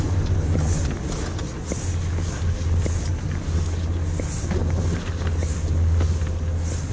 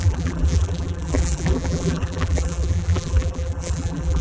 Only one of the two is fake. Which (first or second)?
second